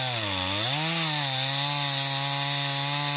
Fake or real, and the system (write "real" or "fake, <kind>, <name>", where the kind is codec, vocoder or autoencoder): real